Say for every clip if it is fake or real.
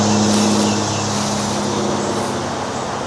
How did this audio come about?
real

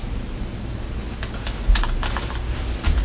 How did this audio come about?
real